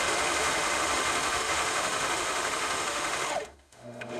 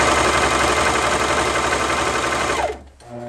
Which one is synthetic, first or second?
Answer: first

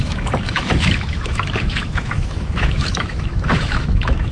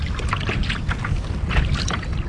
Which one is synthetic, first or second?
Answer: first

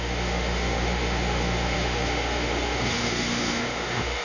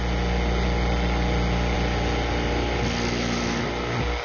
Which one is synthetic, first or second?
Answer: first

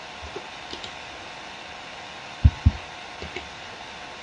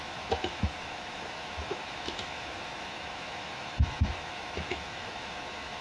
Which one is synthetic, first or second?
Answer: second